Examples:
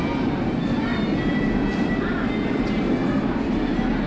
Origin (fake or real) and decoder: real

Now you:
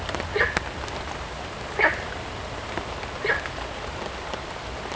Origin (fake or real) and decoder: real